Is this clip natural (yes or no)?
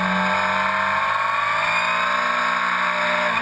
yes